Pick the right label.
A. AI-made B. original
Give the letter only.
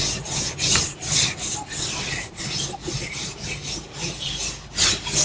B